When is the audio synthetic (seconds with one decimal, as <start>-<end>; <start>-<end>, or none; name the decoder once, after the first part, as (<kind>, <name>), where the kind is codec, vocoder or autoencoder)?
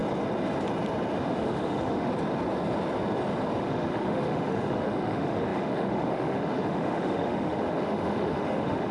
1.2-2.1 (autoencoder, DAC-VAE); 3.6-8.9